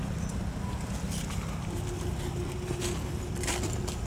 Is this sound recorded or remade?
recorded